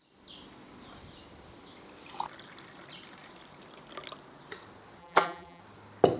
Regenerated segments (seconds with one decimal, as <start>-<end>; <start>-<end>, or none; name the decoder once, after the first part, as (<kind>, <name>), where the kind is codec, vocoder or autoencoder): 5.0-5.6 (vocoder, BigVGAN v2)